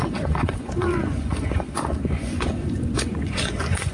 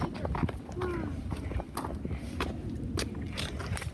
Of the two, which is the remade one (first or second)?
first